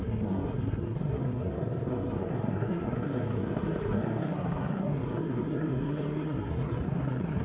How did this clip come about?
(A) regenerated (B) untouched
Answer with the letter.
A